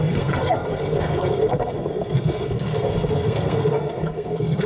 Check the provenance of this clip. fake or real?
fake